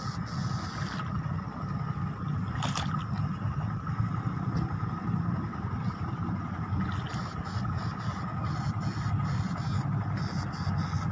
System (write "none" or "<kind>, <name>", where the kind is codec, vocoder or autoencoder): none